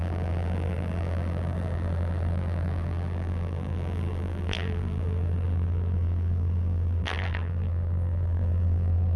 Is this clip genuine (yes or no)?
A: no